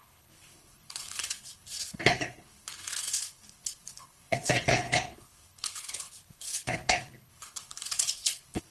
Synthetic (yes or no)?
yes